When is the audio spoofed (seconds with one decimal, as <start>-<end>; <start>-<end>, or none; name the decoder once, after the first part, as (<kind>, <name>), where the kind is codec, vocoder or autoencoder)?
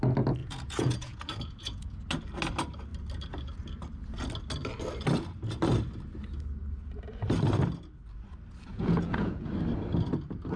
0.4-2.0 (vocoder, Vocos); 8.7-9.5